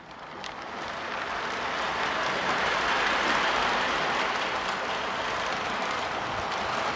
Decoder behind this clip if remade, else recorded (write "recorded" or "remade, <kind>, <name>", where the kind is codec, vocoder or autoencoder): recorded